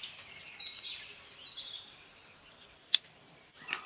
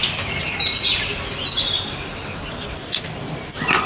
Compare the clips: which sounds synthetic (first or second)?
first